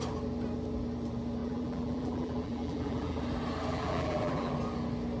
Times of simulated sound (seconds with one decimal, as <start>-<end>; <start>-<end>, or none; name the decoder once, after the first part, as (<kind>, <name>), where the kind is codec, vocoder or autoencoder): 1.4-3.2 (vocoder, BigVGAN v2); 3.7-4.5